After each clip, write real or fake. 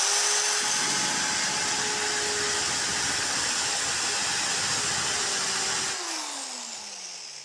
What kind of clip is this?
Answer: real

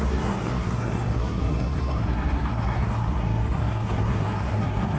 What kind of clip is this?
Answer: fake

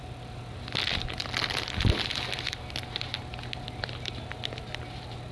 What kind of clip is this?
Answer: real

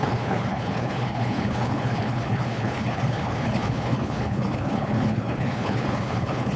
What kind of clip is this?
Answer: fake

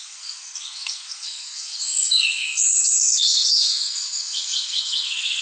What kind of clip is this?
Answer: fake